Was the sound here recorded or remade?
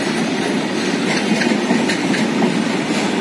recorded